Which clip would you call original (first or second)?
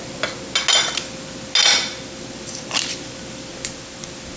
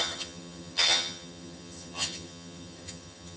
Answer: first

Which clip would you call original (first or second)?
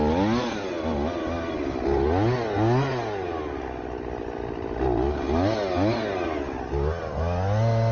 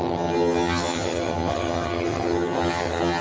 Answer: first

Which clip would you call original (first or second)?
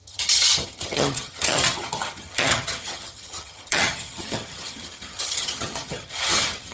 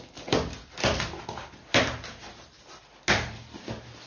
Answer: second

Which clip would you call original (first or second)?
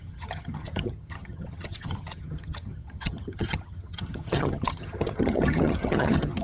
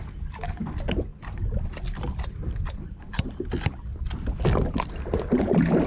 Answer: second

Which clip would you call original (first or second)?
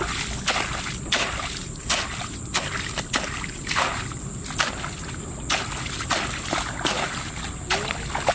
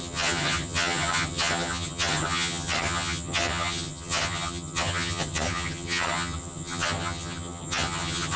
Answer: first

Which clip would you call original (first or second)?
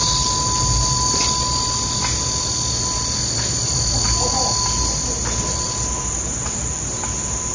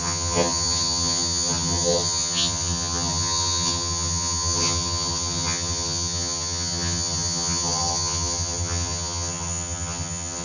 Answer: first